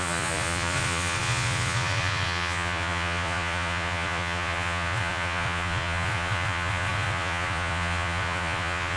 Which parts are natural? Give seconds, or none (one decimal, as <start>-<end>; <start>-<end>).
none